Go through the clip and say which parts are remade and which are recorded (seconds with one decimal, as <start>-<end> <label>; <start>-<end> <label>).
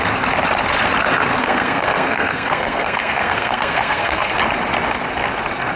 0.0-1.4 recorded; 1.4-4.3 remade; 4.3-5.8 recorded